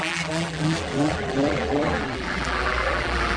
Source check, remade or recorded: remade